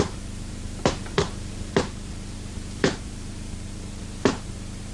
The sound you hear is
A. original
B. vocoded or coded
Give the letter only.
B